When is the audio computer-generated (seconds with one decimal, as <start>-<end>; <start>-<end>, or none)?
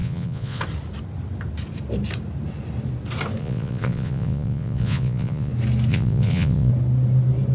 0.0-0.6; 3.4-5.5; 5.9-6.7